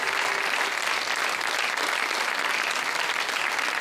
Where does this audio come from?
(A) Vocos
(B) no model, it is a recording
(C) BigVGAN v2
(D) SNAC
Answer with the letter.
B